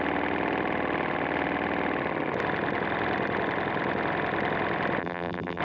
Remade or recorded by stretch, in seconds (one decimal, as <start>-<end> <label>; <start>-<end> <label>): 0.0-5.0 recorded; 5.0-5.6 remade